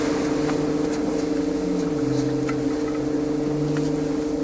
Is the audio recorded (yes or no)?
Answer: yes